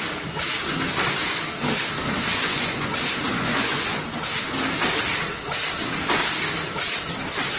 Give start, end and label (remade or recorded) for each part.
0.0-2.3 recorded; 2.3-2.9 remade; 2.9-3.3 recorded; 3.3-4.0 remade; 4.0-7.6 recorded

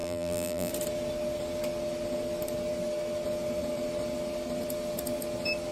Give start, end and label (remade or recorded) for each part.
0.0-0.7 remade; 0.7-5.7 recorded